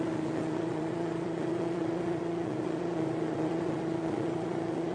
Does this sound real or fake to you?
fake